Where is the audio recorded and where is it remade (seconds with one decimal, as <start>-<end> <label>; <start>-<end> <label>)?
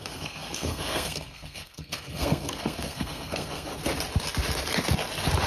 0.0-3.7 remade; 3.7-5.5 recorded